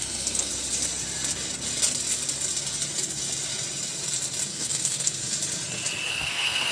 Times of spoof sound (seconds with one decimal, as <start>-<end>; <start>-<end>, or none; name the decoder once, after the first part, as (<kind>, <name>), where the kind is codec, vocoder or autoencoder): 0.0-0.5 (codec, SNAC); 4.5-5.2; 6.1-6.7